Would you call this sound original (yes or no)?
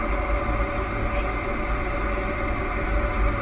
yes